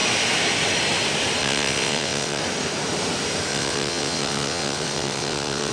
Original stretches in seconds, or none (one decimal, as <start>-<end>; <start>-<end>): 0.0-1.4; 2.4-3.5